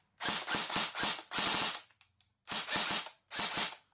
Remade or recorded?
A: recorded